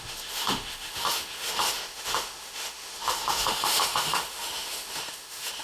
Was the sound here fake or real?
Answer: fake